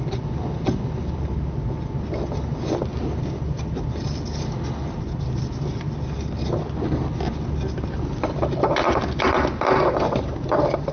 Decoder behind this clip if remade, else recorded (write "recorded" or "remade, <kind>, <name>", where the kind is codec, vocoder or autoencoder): recorded